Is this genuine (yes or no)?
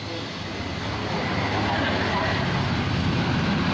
yes